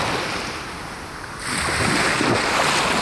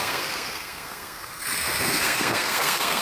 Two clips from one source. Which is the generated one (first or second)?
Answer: second